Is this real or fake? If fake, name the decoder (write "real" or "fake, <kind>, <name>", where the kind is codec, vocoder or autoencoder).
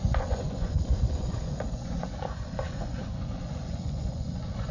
fake, vocoder, Vocos